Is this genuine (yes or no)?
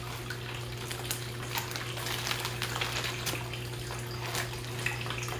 yes